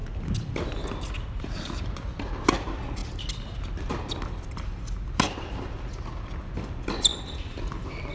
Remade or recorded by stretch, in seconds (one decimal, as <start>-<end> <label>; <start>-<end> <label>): 0.0-7.1 recorded; 7.1-8.1 remade